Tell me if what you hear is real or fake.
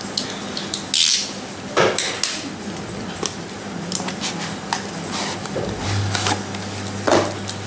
real